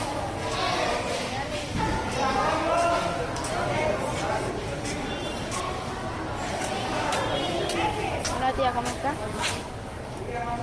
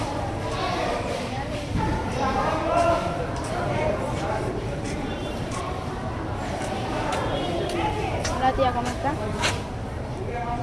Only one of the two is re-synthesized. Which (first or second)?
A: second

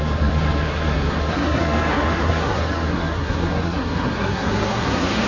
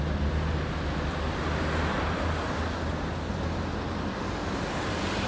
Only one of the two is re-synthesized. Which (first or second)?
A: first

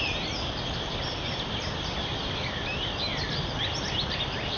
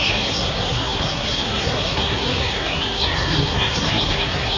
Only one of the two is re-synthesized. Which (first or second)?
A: second